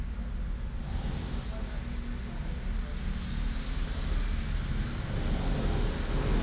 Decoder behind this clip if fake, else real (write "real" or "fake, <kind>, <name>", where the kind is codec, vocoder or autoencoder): real